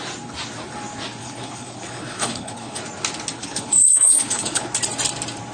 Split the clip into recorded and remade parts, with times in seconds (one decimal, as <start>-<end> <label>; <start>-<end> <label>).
0.0-1.2 recorded; 1.2-2.8 remade; 2.8-3.4 recorded; 3.4-4.7 remade; 4.7-5.5 recorded